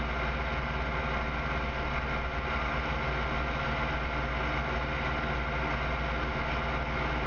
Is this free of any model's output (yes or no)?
yes